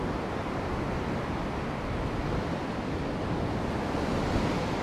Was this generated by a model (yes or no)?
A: no